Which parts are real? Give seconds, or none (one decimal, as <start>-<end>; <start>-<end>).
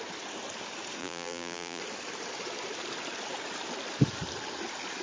0.0-1.0; 1.8-5.0